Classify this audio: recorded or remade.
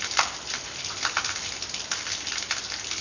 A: remade